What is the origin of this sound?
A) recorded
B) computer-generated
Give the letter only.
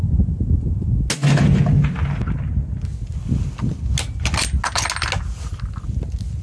A